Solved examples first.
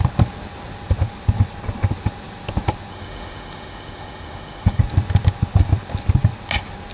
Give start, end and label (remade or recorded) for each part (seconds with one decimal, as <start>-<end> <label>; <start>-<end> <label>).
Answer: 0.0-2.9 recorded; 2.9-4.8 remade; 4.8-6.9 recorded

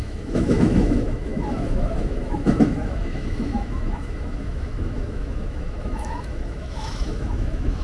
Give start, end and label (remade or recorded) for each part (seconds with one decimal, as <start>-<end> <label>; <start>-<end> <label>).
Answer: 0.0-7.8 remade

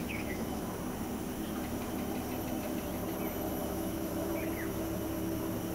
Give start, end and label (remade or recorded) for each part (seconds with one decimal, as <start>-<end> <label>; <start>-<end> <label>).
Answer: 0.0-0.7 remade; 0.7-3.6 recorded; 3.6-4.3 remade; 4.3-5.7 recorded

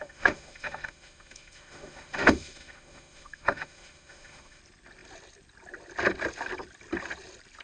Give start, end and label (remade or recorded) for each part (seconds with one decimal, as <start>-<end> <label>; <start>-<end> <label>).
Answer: 0.0-4.6 remade; 4.6-7.6 recorded